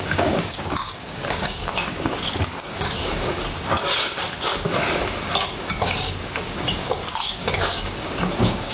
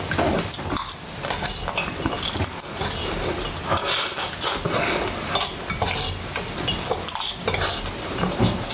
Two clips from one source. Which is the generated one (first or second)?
first